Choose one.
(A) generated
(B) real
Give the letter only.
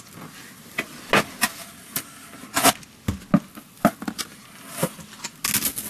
B